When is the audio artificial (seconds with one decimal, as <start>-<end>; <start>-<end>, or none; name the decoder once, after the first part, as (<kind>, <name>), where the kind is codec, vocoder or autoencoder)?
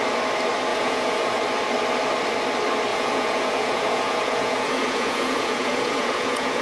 0.7-1.4 (vocoder, Vocos); 2.9-6.6